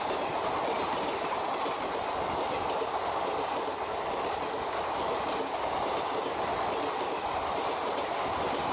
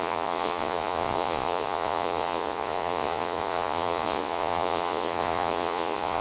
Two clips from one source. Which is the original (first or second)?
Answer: first